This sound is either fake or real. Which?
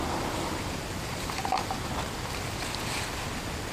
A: real